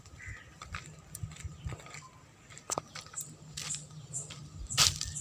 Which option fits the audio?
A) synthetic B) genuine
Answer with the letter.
A